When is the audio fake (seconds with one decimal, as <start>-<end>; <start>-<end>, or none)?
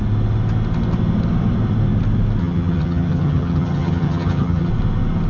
2.4-4.7